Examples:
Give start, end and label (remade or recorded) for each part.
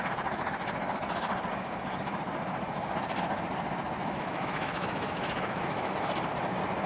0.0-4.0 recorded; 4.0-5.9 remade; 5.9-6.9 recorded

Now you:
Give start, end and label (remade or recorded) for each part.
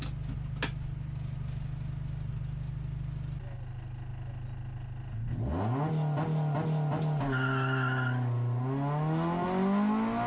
0.0-10.3 recorded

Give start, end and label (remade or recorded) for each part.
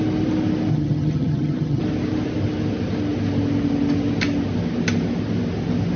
0.0-0.7 recorded; 0.7-1.8 remade; 1.8-6.0 recorded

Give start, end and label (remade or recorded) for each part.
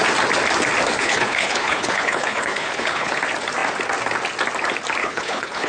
0.0-1.0 recorded; 1.0-3.2 remade; 3.2-5.0 recorded; 5.0-5.7 remade